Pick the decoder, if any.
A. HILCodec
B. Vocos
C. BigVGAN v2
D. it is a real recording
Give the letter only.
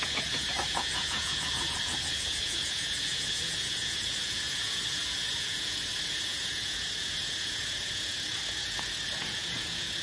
B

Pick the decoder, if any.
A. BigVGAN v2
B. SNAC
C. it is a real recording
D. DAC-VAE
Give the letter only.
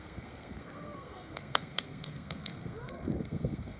B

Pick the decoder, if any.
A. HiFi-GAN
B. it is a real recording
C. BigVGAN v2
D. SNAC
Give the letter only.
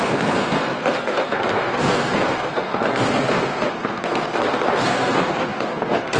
D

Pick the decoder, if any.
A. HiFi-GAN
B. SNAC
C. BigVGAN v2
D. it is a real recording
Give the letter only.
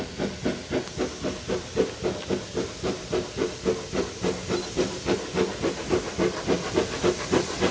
D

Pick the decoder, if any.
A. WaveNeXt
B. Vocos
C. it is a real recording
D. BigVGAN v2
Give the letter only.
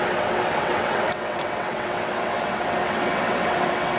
A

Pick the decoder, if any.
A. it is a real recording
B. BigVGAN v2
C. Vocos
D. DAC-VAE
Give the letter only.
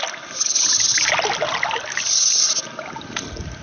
A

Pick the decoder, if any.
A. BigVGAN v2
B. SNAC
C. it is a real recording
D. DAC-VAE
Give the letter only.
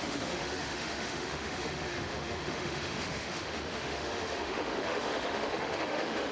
D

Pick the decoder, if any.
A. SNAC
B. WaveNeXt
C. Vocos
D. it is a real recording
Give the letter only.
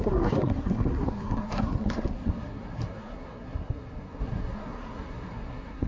A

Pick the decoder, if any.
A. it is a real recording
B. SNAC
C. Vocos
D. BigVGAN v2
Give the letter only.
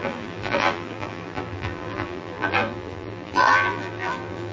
D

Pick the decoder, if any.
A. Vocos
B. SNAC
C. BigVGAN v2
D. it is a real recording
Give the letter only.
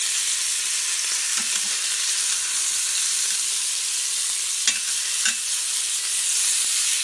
D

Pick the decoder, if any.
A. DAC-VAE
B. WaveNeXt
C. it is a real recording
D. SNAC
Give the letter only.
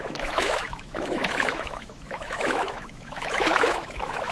A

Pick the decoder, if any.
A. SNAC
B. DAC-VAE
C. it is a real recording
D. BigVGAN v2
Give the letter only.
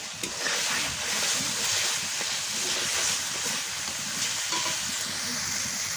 C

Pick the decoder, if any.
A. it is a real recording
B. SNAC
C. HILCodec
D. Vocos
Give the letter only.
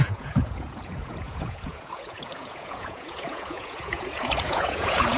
D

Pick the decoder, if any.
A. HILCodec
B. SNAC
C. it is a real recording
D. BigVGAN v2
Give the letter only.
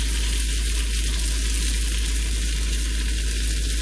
C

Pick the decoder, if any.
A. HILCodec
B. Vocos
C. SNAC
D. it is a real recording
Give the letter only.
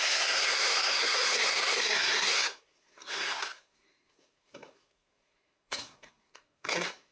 C